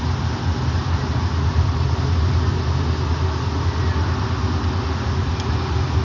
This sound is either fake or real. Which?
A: real